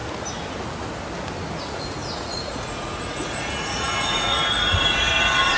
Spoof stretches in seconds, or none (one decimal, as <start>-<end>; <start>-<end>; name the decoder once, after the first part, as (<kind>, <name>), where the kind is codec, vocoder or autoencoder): 1.6-5.6 (vocoder, Vocos)